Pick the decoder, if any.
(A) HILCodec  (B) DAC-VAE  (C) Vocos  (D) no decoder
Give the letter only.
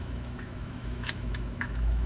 B